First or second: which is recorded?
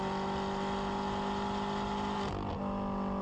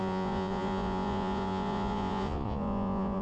first